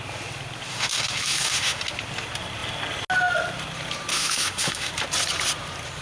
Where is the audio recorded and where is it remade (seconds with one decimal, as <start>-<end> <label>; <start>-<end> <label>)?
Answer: 0.0-0.7 recorded; 0.7-1.8 remade; 1.8-4.1 recorded; 4.1-4.9 remade; 4.9-6.0 recorded